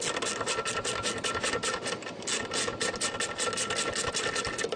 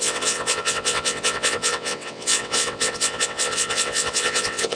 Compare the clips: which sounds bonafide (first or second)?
first